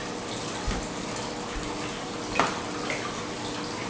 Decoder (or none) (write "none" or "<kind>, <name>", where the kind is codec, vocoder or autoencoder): none